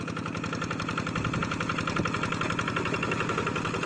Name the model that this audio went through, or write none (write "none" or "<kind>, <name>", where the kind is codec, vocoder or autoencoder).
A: none